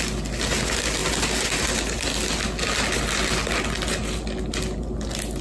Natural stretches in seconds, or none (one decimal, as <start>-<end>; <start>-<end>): 0.0-5.4